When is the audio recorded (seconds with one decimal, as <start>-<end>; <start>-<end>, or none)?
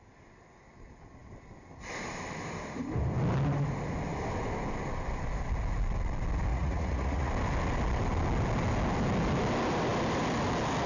0.0-6.5; 7.3-10.9